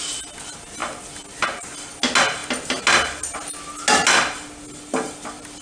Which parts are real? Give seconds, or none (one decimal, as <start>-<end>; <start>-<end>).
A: 0.0-5.6